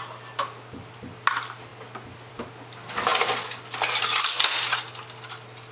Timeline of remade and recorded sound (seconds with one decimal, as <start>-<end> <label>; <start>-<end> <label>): 0.0-5.7 recorded